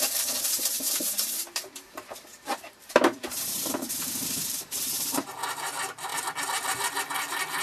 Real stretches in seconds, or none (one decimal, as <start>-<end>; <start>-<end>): 0.0-0.7; 5.3-7.6